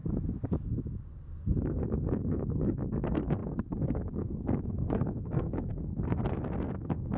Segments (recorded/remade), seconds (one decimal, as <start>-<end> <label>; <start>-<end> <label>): 0.0-1.6 recorded; 1.6-6.2 remade; 6.2-6.7 recorded; 6.7-7.2 remade

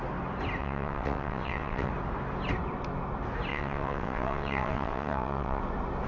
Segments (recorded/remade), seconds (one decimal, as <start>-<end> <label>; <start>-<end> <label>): 0.0-0.6 recorded; 0.6-1.9 remade; 1.9-3.5 recorded; 3.5-5.6 remade; 5.6-6.1 recorded

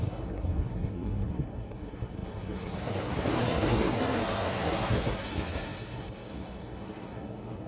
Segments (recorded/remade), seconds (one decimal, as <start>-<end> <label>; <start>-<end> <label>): 0.0-7.7 remade

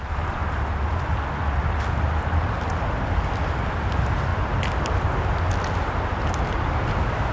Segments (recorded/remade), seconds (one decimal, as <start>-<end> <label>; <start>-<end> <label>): 0.0-0.4 remade; 0.4-1.9 recorded; 1.9-4.3 remade; 4.3-7.3 recorded

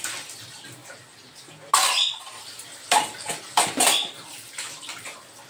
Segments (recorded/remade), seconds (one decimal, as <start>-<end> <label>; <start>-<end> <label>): 0.0-2.0 recorded; 2.0-5.5 remade